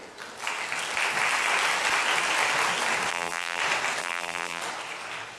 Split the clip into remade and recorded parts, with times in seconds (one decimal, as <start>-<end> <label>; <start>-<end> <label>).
0.0-3.1 recorded; 3.1-3.6 remade; 3.6-4.0 recorded; 4.0-4.6 remade; 4.6-5.4 recorded